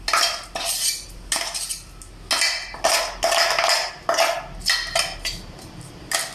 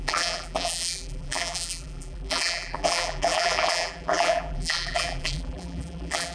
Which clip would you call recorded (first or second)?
first